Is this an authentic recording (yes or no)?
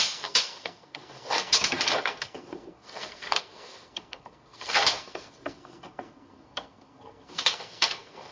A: no